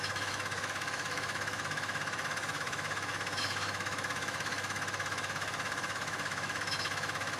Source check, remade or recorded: remade